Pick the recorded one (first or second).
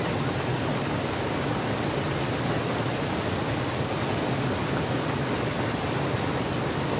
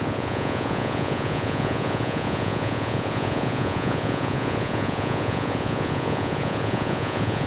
first